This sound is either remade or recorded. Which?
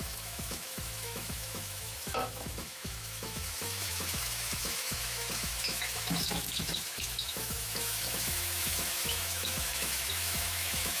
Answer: remade